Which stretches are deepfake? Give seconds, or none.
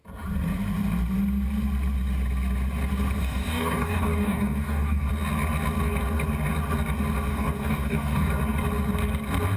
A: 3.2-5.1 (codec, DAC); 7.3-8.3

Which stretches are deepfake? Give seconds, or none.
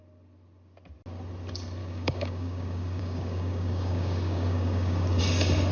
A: 1.8-5.2 (codec, DAC)